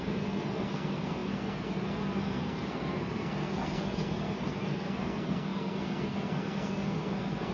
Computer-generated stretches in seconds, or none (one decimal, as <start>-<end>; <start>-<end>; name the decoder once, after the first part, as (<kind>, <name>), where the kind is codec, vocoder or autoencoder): 0.0-7.5 (codec, SNAC)